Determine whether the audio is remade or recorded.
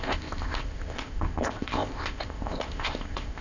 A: remade